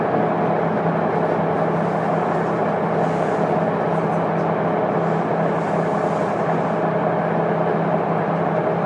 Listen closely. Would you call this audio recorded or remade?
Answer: recorded